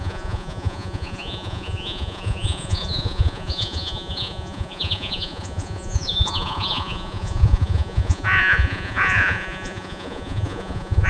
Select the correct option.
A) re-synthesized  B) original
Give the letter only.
A